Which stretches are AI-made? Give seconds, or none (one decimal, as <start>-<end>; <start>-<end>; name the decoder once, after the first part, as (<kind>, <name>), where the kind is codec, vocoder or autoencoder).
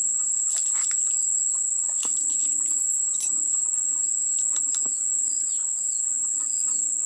none